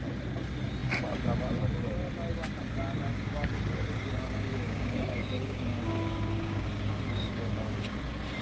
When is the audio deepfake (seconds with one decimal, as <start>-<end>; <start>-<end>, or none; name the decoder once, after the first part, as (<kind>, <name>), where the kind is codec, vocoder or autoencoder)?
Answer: 3.1-4.1 (codec, DAC); 4.5-8.0